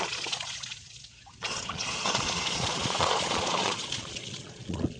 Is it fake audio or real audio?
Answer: fake